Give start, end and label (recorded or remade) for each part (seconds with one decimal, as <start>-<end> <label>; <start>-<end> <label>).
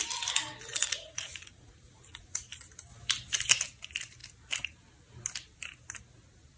0.0-0.7 recorded; 0.7-2.4 remade; 2.4-6.6 recorded